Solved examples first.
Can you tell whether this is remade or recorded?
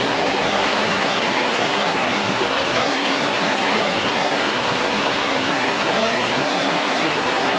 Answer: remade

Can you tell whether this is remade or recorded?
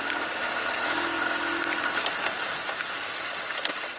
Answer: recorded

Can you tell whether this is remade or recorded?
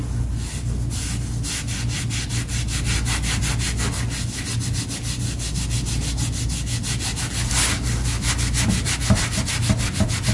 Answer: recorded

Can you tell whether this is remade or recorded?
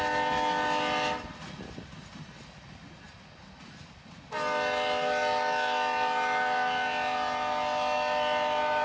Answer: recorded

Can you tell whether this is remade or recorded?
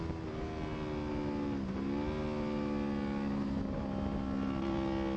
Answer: recorded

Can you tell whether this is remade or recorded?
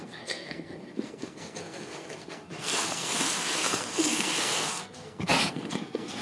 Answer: remade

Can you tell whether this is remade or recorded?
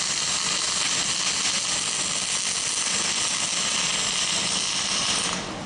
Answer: recorded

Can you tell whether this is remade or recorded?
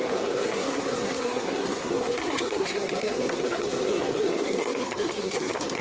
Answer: remade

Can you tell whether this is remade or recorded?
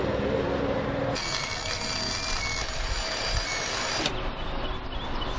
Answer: recorded